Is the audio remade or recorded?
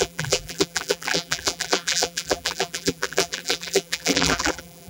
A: remade